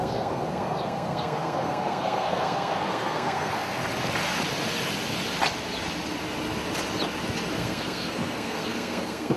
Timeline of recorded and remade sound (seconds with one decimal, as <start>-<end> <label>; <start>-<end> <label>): 0.0-3.8 remade; 3.8-7.5 recorded; 7.5-9.4 remade